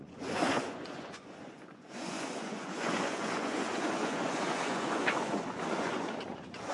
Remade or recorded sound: remade